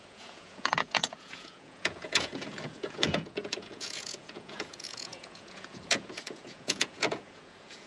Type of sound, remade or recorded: remade